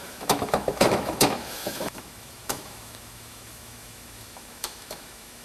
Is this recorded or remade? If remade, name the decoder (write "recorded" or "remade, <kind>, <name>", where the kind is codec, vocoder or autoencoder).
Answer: remade, autoencoder, DAC-VAE